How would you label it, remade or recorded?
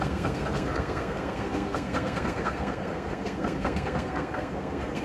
remade